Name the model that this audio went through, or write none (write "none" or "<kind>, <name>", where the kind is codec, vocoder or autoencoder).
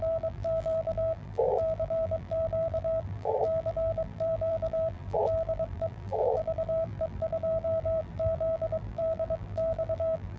vocoder, BigVGAN v2